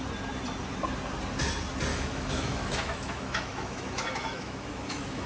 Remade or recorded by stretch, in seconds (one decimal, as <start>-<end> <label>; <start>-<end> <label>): 0.0-1.9 recorded; 1.9-5.3 remade